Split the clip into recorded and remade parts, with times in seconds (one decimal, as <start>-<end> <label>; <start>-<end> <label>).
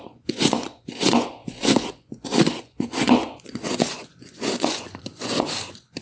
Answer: 0.0-6.0 remade